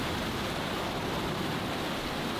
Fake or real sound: real